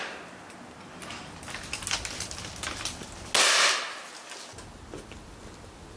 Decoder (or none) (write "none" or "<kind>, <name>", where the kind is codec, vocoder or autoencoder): none